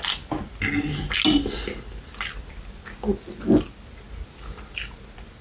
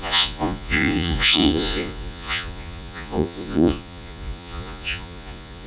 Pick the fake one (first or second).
second